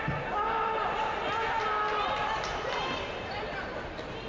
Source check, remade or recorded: recorded